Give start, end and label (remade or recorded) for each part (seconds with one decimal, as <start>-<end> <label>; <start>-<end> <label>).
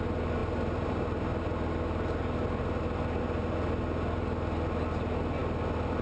0.0-6.0 recorded